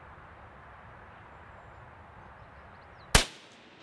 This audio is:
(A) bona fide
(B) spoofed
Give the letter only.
A